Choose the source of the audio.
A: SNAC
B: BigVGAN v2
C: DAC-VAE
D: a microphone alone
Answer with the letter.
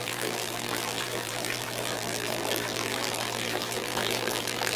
B